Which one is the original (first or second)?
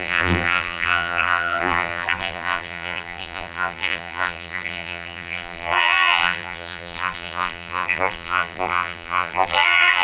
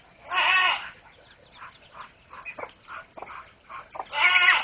second